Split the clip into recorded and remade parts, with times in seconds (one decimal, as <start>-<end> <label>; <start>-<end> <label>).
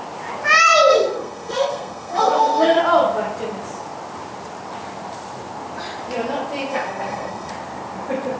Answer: 0.0-0.9 recorded; 0.9-2.8 remade; 2.8-6.7 recorded; 6.7-7.5 remade; 7.5-8.4 recorded